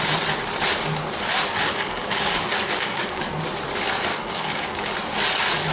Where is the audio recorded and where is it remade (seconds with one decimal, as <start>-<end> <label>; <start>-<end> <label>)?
0.0-1.5 recorded; 1.5-3.3 remade; 3.3-4.1 recorded; 4.1-4.9 remade; 4.9-5.7 recorded